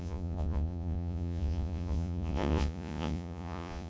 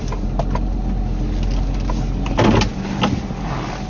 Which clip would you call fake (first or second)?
first